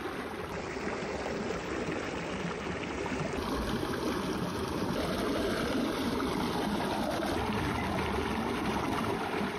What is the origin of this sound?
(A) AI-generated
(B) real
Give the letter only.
B